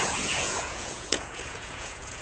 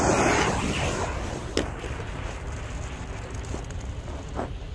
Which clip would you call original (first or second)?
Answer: second